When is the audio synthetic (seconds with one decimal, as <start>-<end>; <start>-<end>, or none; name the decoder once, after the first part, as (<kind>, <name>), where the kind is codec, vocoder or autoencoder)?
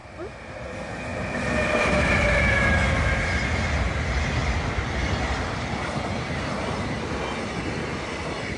0.0-0.6 (vocoder, BigVGAN v2); 1.1-2.1; 4.4-7.2